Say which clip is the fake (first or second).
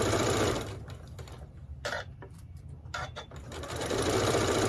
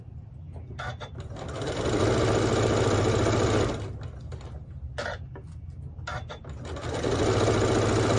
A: first